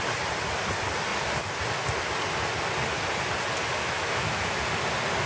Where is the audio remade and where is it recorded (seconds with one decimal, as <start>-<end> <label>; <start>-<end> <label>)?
0.0-3.8 recorded; 3.8-4.6 remade; 4.6-5.3 recorded